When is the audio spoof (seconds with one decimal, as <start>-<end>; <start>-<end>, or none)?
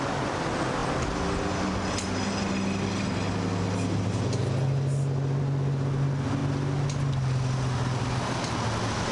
none